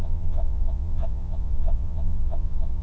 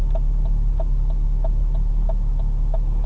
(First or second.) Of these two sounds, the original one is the second